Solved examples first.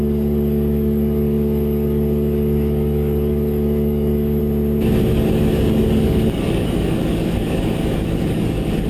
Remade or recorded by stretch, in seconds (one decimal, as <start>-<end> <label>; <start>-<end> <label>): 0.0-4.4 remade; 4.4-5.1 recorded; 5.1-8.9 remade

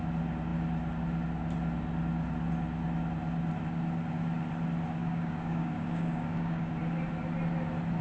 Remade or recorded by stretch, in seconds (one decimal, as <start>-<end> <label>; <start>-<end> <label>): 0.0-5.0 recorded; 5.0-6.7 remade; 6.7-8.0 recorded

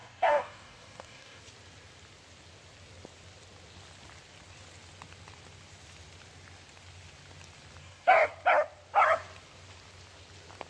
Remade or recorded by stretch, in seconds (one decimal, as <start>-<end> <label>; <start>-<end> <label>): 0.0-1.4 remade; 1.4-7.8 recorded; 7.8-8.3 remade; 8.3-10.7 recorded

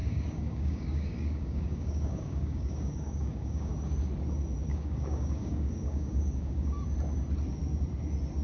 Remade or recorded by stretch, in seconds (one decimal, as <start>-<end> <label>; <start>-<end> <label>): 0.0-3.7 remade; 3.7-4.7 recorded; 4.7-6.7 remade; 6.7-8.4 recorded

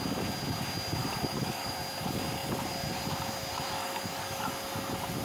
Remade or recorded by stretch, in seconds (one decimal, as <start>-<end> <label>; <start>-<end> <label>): 0.0-1.0 recorded; 1.0-1.7 remade; 1.7-3.8 recorded; 3.8-4.5 remade; 4.5-5.2 recorded

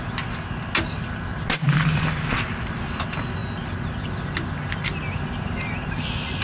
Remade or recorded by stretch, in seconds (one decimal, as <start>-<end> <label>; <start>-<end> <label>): 0.0-6.4 recorded

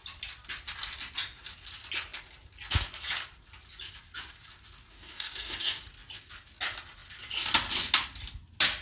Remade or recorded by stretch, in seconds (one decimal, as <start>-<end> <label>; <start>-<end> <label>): 0.0-4.9 recorded; 4.9-5.8 remade; 5.8-8.8 recorded